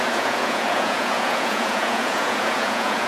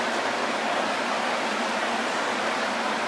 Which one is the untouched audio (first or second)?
second